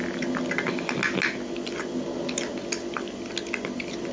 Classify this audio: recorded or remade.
recorded